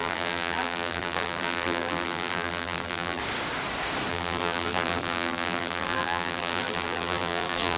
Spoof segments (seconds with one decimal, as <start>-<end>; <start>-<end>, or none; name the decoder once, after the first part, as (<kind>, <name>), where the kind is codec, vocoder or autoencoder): 0.0-3.2 (vocoder, BigVGAN v2); 4.1-7.8